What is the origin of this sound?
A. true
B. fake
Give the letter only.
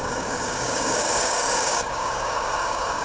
B